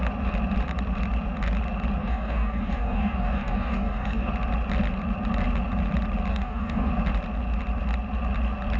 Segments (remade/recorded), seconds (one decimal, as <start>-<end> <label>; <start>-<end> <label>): 0.0-2.0 recorded; 2.0-4.3 remade; 4.3-6.3 recorded; 6.3-6.9 remade; 6.9-8.8 recorded

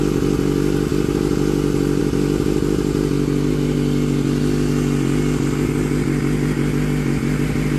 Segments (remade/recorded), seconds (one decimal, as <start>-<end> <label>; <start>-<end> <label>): 0.0-7.8 recorded

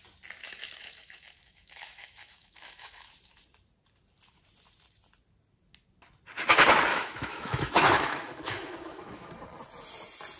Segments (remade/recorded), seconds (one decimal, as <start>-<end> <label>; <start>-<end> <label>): 0.0-0.4 recorded; 0.4-3.1 remade; 3.1-6.9 recorded; 6.9-9.3 remade; 9.3-10.4 recorded

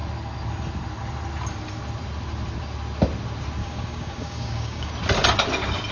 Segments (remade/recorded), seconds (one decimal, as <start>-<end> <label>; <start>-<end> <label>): 0.0-3.6 recorded; 3.6-4.9 remade; 4.9-5.9 recorded

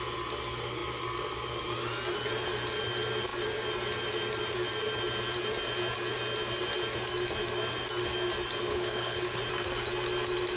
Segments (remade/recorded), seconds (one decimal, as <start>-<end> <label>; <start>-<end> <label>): 0.0-8.7 recorded; 8.7-9.4 remade; 9.4-10.6 recorded

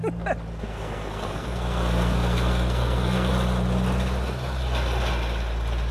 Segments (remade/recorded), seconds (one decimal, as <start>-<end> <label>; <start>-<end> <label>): 0.0-0.5 recorded; 0.5-3.3 remade; 3.3-5.9 recorded

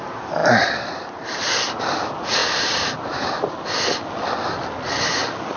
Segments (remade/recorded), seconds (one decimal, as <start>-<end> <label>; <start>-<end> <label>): 0.0-0.4 recorded; 0.4-1.8 remade; 1.8-2.4 recorded; 2.4-3.4 remade; 3.4-5.6 recorded